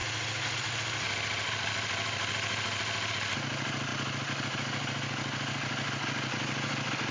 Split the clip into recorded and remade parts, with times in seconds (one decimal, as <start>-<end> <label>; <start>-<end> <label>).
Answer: 0.0-7.1 recorded